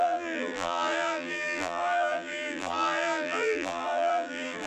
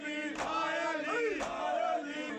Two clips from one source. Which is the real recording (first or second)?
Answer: second